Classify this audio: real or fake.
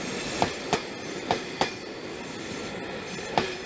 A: real